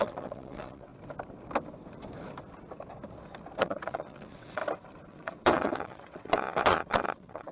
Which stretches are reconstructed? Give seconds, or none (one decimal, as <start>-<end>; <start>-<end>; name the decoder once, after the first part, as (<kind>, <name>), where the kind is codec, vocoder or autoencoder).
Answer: 0.0-0.9 (vocoder, WaveNeXt); 3.6-4.6; 5.1-7.5